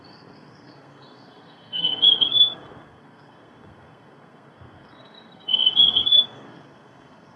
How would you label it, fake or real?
fake